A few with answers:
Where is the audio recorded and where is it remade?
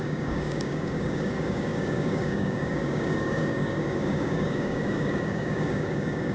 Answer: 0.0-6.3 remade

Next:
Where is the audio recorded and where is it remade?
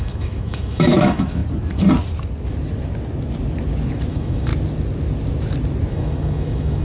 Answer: 0.0-1.4 remade; 1.4-4.1 recorded; 4.1-4.5 remade; 4.5-5.9 recorded; 5.9-6.8 remade